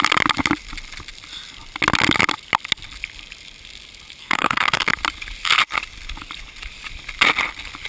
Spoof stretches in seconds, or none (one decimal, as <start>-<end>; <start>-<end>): 4.2-4.9